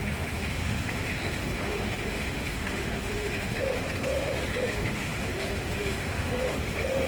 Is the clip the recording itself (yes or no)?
no